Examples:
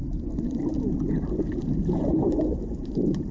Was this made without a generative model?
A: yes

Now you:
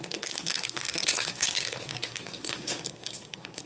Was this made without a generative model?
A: no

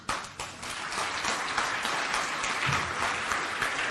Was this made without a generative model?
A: yes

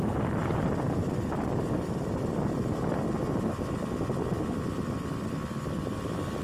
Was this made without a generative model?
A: yes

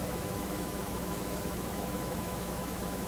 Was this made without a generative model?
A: no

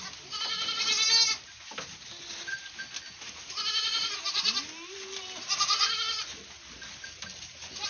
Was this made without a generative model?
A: yes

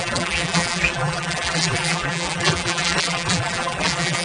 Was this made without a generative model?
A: no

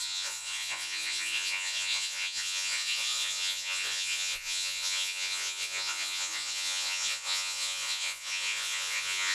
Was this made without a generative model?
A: no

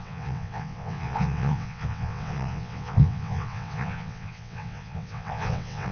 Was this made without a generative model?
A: no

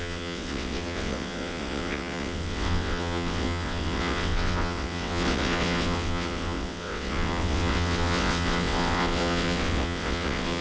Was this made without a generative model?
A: no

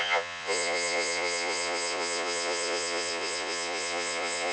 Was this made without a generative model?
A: no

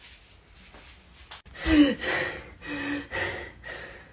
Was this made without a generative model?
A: yes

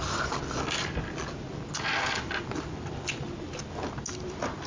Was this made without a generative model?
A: yes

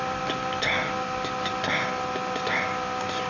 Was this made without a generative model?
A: yes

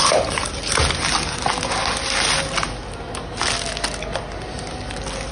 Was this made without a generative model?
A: yes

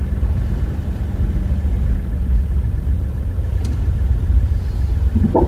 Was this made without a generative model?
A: no